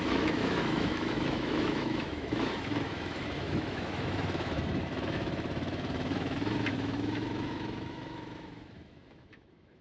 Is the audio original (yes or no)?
no